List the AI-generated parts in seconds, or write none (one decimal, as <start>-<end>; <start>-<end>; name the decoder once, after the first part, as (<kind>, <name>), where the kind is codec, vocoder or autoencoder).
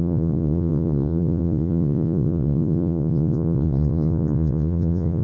0.0-5.2 (vocoder, Vocos)